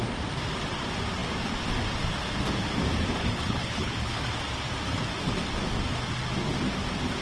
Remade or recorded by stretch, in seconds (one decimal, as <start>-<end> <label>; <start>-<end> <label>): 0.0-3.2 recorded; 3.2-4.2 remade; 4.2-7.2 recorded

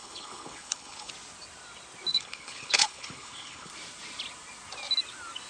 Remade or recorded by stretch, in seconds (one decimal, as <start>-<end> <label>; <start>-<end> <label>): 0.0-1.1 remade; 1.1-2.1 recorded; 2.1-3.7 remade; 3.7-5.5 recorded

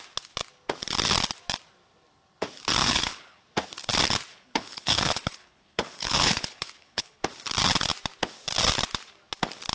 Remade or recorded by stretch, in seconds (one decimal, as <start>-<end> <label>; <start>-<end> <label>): 0.0-2.8 recorded; 2.8-3.4 remade; 3.4-4.3 recorded; 4.3-7.2 remade; 7.2-9.7 recorded

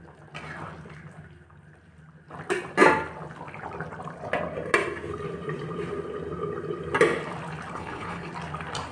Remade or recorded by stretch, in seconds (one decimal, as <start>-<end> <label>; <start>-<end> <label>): 0.0-7.7 recorded; 7.7-8.3 remade; 8.3-8.9 recorded

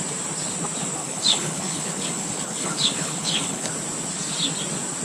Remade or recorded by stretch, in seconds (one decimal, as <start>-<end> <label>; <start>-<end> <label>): 0.0-1.0 recorded; 1.0-3.7 remade; 3.7-5.0 recorded

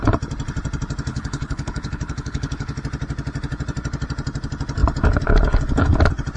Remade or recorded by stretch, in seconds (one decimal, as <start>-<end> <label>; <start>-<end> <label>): 0.0-1.1 recorded; 1.1-2.8 remade; 2.8-6.4 recorded